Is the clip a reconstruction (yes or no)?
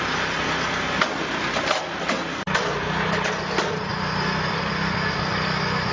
yes